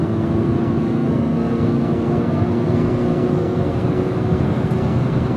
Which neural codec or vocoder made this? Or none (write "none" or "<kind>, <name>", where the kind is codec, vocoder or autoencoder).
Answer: codec, SNAC